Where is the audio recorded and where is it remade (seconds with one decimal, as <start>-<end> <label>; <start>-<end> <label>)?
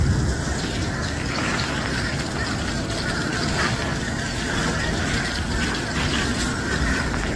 0.0-0.8 recorded; 0.8-2.1 remade; 2.1-3.3 recorded; 3.3-5.1 remade; 5.1-6.5 recorded; 6.5-7.4 remade